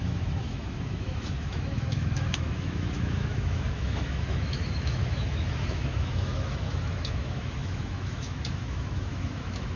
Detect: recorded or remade remade